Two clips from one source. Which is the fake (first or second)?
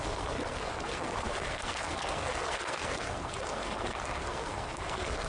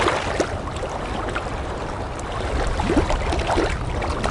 first